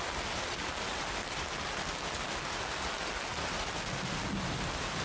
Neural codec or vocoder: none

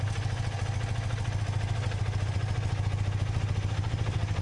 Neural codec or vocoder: none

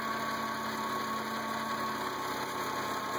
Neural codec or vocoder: none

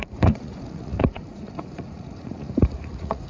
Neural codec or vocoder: vocoder, Vocos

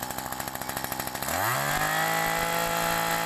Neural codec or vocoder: none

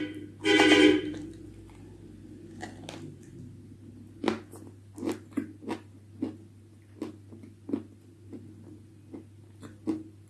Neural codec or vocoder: none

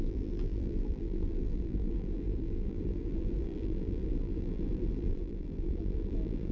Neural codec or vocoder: vocoder, BigVGAN v2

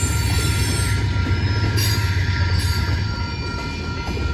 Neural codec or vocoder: none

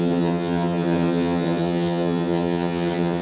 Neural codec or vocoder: vocoder, HiFi-GAN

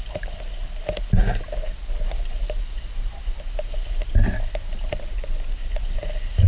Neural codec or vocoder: none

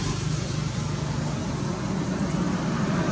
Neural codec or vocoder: none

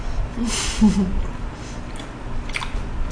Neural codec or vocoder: none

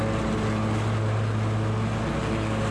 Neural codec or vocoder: none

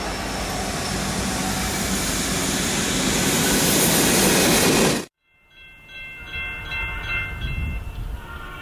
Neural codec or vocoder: none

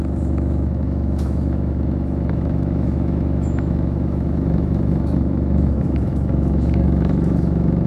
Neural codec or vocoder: autoencoder, DAC-VAE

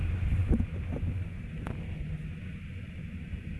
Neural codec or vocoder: none